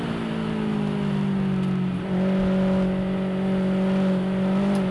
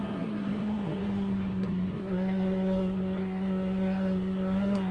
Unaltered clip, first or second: first